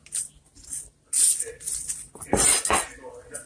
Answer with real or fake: real